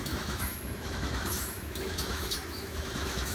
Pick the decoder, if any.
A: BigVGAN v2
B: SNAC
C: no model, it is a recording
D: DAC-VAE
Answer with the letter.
D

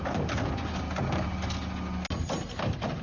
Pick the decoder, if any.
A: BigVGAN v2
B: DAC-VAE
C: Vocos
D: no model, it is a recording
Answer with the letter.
D